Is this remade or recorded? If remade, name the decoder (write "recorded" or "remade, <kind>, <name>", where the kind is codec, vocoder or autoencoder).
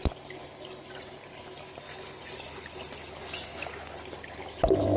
recorded